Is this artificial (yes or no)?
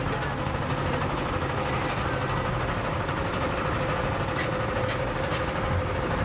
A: no